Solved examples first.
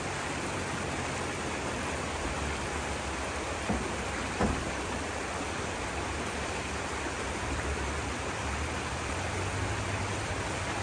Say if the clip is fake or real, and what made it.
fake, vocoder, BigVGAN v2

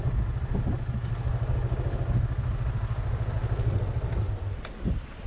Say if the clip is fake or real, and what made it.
real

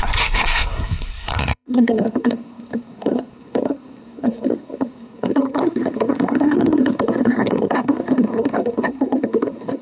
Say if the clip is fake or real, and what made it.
fake, codec, SNAC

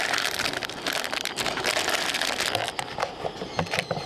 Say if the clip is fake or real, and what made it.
real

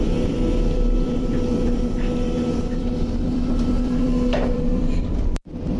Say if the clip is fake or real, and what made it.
fake, vocoder, BigVGAN v2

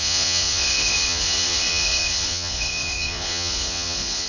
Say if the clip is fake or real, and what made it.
fake, vocoder, Vocos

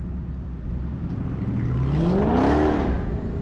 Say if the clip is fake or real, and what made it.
real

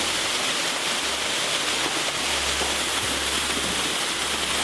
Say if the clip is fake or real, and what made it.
real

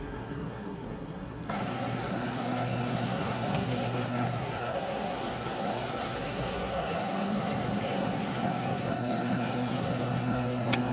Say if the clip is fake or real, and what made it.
fake, codec, SNAC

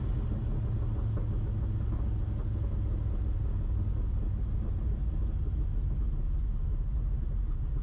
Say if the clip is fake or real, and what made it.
real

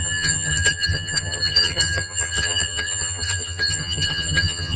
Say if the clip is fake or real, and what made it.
fake, vocoder, HiFi-GAN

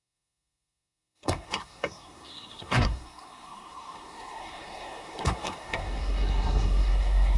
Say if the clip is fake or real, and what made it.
fake, codec, SNAC